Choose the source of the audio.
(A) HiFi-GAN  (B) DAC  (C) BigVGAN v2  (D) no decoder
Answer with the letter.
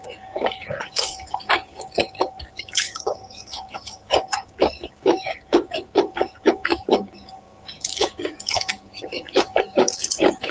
B